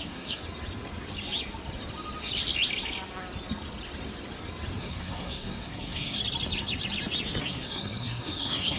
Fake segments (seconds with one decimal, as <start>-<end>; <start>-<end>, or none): 0.0-0.4; 4.8-6.2; 7.4-8.8